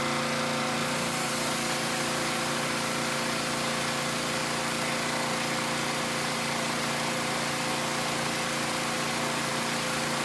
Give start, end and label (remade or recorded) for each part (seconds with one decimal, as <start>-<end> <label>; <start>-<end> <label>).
0.0-0.8 recorded; 0.8-1.3 remade; 1.3-10.2 recorded